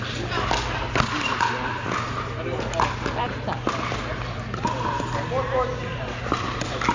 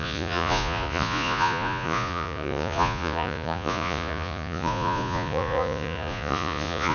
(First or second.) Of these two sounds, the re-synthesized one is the second